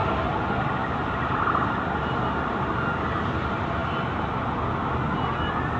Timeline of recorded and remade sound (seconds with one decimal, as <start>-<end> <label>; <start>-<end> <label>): 0.0-5.8 recorded